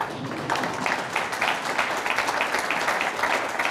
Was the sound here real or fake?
real